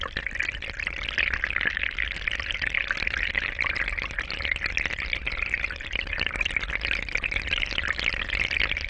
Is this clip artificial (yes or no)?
no